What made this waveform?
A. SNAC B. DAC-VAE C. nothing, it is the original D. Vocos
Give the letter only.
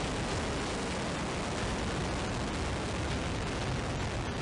C